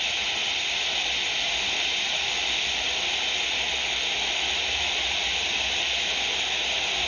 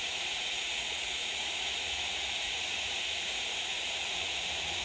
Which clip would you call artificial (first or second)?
second